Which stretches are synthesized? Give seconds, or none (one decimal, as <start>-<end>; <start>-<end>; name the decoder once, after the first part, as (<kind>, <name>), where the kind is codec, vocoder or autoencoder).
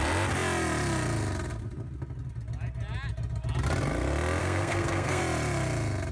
4.4-5.2 (codec, SNAC)